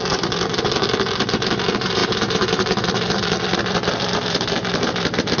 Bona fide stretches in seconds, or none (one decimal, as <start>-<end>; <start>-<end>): none